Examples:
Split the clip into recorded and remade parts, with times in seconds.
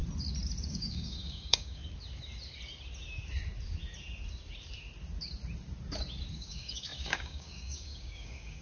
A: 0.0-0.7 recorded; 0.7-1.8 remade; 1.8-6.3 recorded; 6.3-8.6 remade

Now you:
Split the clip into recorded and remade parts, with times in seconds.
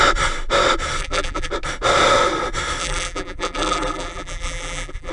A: 0.0-1.0 recorded; 1.0-1.5 remade; 1.5-2.8 recorded; 2.8-5.1 remade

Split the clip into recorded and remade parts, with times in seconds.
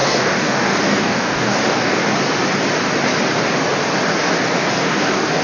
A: 0.0-2.0 remade; 2.0-4.8 recorded; 4.8-5.4 remade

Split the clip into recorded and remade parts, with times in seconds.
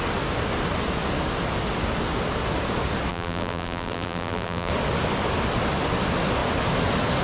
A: 0.0-3.1 recorded; 3.1-4.7 remade; 4.7-7.2 recorded